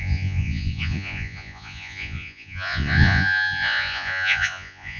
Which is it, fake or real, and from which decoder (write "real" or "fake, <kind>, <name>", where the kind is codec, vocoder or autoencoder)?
fake, vocoder, Vocos